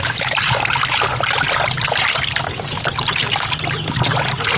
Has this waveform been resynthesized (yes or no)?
no